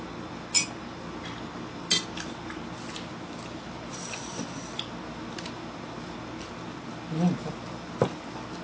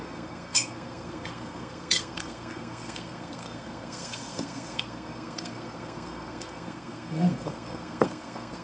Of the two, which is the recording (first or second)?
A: first